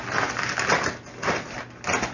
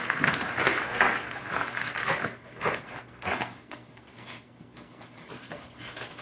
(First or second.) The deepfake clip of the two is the second